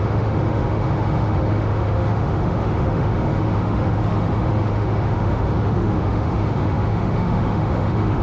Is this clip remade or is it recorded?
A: remade